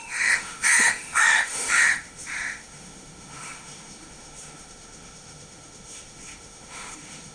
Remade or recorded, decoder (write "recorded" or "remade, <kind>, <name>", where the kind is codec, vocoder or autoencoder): remade, autoencoder, DAC-VAE